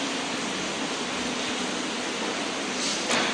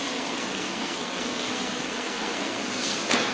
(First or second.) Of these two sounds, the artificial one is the second